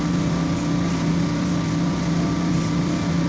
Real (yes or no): yes